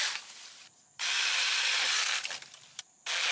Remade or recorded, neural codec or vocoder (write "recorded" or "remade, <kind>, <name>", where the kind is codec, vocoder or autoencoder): recorded